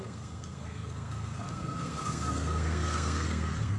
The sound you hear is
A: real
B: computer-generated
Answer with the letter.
B